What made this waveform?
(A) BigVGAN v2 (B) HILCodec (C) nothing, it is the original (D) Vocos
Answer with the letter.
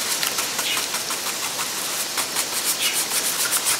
C